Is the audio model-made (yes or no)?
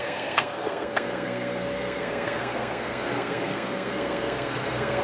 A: yes